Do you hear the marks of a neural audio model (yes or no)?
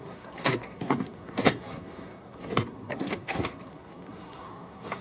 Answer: yes